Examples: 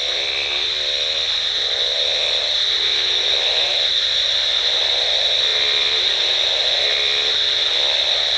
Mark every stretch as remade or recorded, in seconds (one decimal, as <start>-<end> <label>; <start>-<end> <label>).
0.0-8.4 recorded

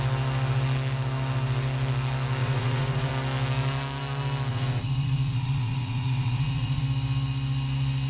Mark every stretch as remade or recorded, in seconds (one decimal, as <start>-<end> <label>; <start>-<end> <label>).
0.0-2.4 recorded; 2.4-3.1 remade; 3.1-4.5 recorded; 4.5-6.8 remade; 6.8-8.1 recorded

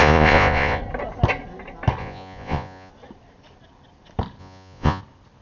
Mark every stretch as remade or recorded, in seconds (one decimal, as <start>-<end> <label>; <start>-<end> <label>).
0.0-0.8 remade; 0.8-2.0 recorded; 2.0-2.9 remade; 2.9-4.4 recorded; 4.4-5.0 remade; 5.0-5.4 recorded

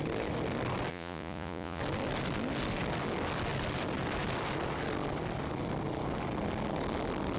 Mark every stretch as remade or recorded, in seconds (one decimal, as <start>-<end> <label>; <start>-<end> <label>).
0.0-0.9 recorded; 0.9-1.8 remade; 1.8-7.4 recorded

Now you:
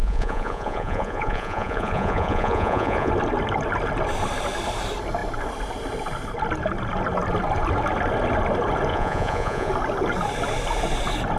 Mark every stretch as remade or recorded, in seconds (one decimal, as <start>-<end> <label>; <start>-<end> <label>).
0.0-3.1 remade; 3.1-8.9 recorded; 8.9-9.7 remade; 9.7-11.4 recorded

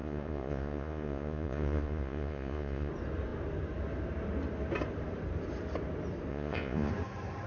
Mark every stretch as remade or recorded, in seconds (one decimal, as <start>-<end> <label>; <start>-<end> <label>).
0.0-2.9 remade; 2.9-6.3 recorded; 6.3-6.9 remade; 6.9-7.5 recorded